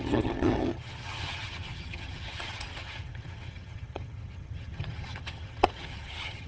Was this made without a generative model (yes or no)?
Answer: no